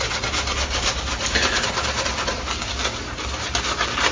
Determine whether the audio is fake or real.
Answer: real